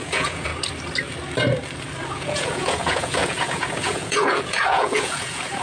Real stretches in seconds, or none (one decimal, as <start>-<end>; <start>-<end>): 0.5-2.1